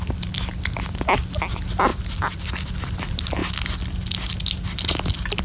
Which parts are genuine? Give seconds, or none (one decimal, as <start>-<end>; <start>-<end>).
0.0-5.4